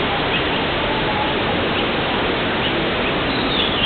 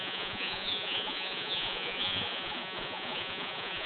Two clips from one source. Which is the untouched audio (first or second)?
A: first